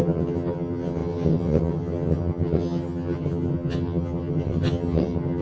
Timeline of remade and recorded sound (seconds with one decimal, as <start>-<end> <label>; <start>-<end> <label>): 0.0-5.4 remade